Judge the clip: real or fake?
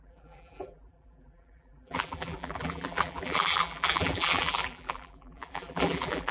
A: fake